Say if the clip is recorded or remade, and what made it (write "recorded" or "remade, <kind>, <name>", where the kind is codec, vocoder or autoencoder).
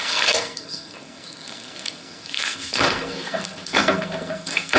remade, codec, SNAC